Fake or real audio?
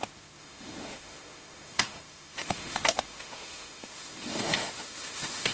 fake